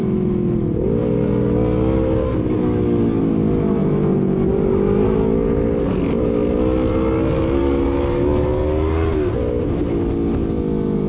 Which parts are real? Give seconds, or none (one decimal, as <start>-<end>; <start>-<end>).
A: 0.0-2.2; 3.2-7.6; 8.5-11.1